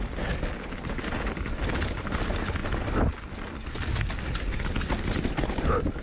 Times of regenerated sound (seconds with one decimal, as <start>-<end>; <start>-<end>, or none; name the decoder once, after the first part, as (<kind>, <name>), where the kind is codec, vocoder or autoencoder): none